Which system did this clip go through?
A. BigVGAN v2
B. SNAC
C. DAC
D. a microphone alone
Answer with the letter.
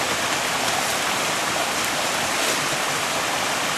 D